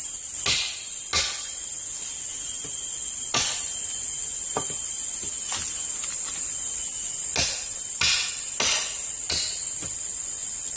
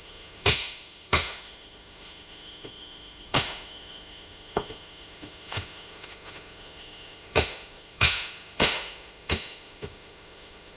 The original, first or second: first